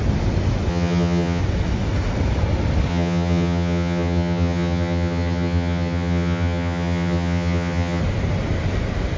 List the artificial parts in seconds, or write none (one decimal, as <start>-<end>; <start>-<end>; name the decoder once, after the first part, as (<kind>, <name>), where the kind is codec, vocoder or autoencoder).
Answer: 0.7-1.4 (vocoder, HiFi-GAN); 2.9-8.0